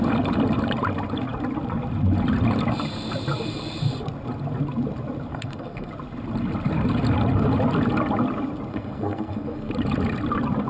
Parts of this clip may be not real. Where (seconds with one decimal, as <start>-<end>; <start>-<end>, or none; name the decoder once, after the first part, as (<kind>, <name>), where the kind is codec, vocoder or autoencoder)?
5.3-5.9 (codec, SNAC); 8.7-9.7